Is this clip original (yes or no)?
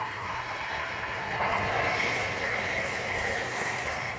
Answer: no